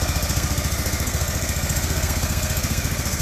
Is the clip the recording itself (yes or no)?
no